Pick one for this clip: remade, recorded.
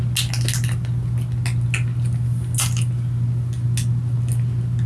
recorded